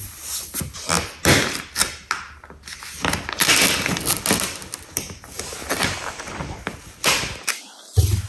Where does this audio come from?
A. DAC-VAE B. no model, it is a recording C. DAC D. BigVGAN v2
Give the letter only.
B